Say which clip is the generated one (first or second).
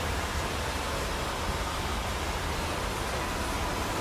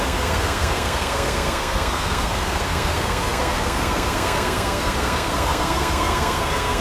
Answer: second